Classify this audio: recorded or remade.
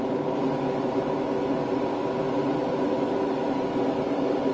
recorded